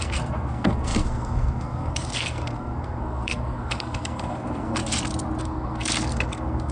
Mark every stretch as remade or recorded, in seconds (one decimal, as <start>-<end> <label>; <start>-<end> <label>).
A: 0.0-4.8 remade; 4.8-5.4 recorded; 5.4-6.7 remade